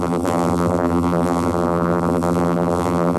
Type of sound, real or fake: fake